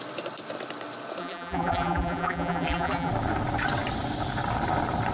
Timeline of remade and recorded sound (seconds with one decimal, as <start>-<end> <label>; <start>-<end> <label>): 0.0-1.2 recorded; 1.2-3.1 remade; 3.1-5.1 recorded